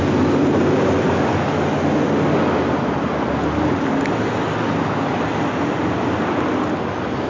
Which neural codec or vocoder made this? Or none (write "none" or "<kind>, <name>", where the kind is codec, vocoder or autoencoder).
none